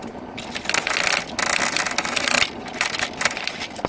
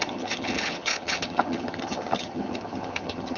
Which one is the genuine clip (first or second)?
first